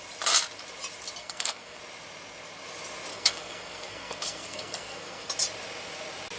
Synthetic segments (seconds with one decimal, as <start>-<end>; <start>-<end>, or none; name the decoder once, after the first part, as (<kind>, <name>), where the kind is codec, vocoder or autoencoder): 1.2-1.8 (codec, SNAC); 3.1-5.3